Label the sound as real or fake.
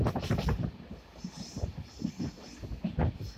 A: real